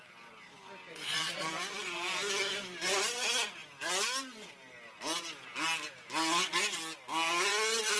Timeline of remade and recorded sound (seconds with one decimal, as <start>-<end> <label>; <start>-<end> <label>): 0.0-0.9 recorded; 0.9-1.5 remade; 1.5-8.0 recorded